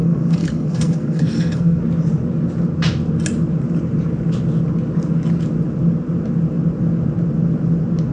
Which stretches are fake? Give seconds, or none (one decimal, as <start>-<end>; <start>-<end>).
0.0-1.8

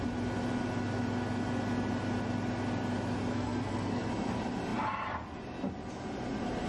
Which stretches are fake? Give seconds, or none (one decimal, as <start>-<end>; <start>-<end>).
3.3-4.1

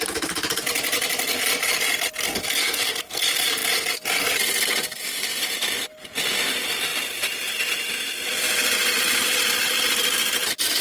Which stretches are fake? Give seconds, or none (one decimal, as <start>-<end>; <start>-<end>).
2.6-3.2